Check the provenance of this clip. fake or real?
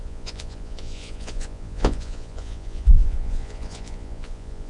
fake